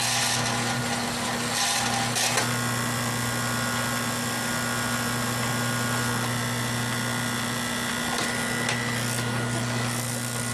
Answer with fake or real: real